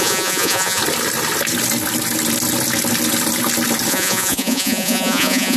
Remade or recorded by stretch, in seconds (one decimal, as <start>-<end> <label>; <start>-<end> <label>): 0.0-0.8 remade; 0.8-3.9 recorded; 3.9-5.6 remade